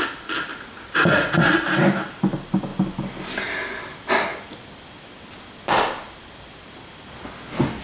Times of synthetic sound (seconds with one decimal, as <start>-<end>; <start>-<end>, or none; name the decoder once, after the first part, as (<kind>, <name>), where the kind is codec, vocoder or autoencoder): 0.5-1.5 (vocoder, Vocos)